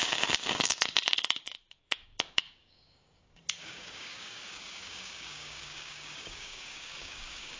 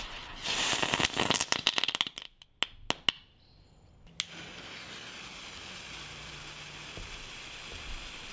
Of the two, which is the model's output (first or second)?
first